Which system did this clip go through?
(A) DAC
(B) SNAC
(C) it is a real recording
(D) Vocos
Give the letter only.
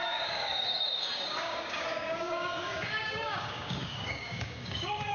A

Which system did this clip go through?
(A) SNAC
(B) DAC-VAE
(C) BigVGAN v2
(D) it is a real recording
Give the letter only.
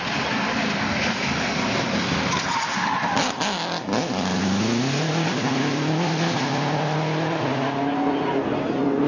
D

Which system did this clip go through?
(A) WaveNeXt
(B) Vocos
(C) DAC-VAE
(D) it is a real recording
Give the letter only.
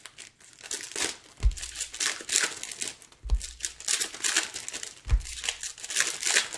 D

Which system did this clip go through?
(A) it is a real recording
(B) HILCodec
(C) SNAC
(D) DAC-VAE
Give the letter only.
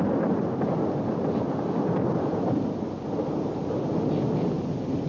A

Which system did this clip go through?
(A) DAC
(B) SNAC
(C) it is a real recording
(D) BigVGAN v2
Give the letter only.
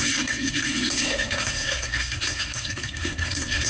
B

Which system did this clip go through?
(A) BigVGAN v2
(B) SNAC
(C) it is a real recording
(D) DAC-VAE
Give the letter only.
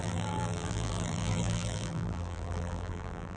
A